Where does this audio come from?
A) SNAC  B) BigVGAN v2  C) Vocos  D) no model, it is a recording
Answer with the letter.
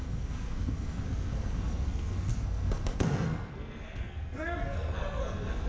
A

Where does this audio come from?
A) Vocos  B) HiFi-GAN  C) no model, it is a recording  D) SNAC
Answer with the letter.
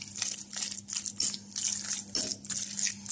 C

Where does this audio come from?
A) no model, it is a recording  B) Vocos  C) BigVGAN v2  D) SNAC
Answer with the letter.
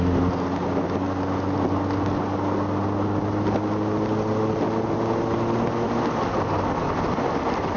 A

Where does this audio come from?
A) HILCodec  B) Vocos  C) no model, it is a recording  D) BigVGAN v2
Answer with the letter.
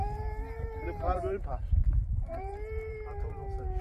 D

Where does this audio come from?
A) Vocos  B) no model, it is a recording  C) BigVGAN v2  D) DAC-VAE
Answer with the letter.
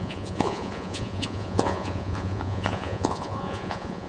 A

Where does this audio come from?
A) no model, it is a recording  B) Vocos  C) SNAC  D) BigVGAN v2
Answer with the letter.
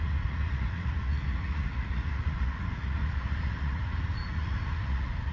B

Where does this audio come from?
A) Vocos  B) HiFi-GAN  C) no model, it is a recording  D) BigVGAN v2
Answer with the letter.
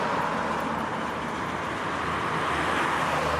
C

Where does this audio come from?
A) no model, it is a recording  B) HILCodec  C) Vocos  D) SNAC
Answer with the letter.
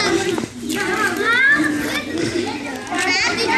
A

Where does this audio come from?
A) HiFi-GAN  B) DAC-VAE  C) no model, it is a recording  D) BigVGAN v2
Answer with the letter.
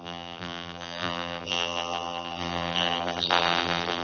D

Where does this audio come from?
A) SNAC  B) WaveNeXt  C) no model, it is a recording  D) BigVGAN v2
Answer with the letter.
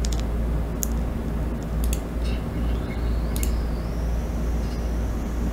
C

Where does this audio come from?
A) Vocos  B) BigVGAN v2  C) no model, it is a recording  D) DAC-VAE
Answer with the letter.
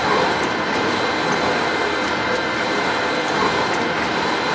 B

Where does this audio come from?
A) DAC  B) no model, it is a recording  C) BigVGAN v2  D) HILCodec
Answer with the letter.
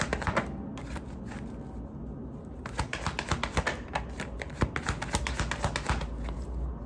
B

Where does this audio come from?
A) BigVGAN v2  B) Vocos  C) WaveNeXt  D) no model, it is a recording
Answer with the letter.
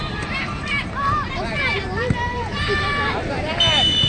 D